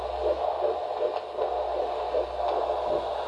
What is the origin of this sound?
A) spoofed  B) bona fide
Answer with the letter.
B